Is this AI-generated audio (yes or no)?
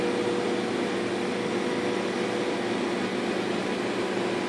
no